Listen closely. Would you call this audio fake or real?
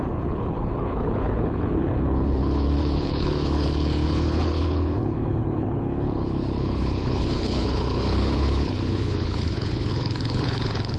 fake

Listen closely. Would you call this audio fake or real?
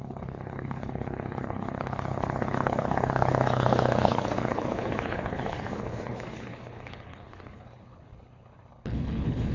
fake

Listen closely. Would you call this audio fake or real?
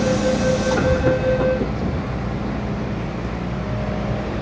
real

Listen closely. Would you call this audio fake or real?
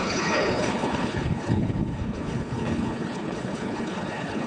fake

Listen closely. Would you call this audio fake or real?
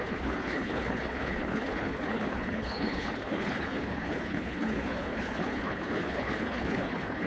fake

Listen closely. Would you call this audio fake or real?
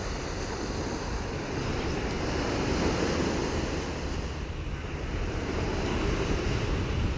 real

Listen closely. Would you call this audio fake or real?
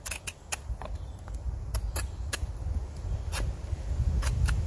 real